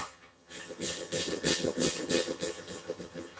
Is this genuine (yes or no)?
no